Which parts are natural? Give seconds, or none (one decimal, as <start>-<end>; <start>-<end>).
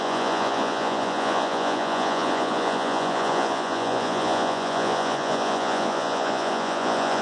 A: none